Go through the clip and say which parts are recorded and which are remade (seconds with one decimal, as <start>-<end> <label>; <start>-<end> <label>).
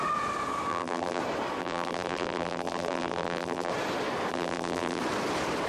0.0-0.7 recorded; 0.7-1.2 remade; 1.2-1.6 recorded; 1.6-3.7 remade; 3.7-4.3 recorded; 4.3-5.0 remade; 5.0-5.7 recorded